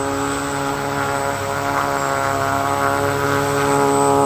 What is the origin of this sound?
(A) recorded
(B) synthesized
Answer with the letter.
A